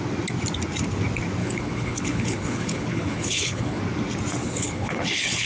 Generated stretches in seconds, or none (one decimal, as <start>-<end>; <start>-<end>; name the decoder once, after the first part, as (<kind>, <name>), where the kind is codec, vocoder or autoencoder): 1.4-3.8 (codec, HILCodec); 4.4-5.5